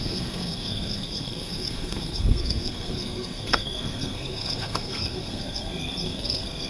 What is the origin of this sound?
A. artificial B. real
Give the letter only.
A